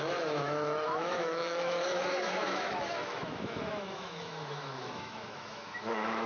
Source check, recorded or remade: remade